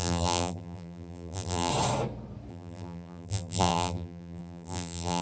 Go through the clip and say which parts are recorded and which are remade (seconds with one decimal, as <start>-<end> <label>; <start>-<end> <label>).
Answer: 0.0-1.7 remade; 1.7-2.5 recorded; 2.5-5.2 remade